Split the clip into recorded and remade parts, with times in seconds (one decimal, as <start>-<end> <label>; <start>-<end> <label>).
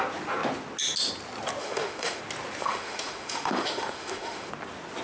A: 0.0-1.6 recorded; 1.6-2.2 remade; 2.2-2.6 recorded; 2.6-4.5 remade; 4.5-5.0 recorded